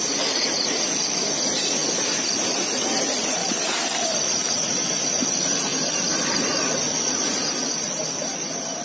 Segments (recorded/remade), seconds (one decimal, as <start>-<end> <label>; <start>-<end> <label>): 0.0-3.4 recorded; 3.4-4.4 remade; 4.4-5.7 recorded; 5.7-8.8 remade